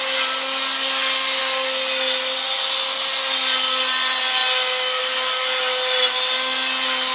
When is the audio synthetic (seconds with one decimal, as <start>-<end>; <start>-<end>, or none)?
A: none